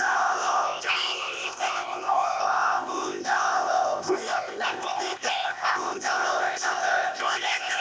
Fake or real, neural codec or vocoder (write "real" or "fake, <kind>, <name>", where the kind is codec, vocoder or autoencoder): fake, codec, ZipCodec